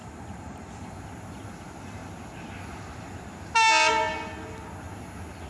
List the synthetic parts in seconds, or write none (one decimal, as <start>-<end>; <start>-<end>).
0.0-1.0